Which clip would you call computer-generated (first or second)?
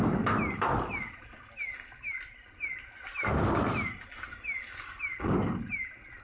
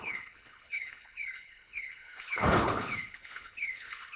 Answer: second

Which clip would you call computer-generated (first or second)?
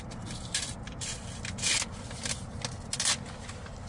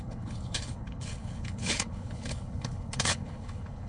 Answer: second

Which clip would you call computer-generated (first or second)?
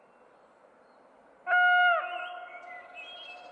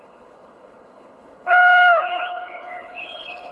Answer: second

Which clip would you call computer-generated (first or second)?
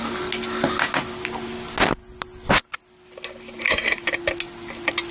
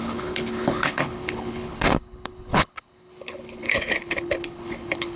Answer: second